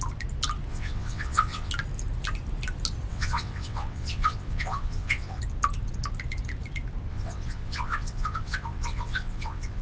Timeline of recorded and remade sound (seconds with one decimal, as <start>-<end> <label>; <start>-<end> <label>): 0.0-0.7 recorded; 0.7-1.7 remade; 1.7-3.1 recorded; 3.1-5.4 remade; 5.4-7.1 recorded; 7.1-9.8 remade